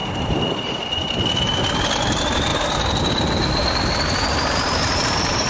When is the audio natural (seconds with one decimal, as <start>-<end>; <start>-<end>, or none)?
0.7-4.8